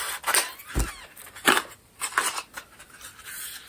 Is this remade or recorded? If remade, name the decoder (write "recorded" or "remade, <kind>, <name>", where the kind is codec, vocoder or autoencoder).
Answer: recorded